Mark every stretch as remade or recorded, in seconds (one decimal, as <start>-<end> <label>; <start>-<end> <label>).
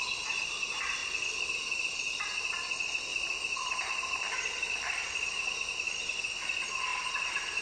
0.0-1.0 recorded; 1.0-2.0 remade; 2.0-3.1 recorded; 3.1-6.2 remade; 6.2-7.6 recorded